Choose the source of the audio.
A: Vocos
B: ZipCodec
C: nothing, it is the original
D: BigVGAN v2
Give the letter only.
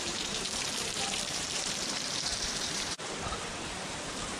D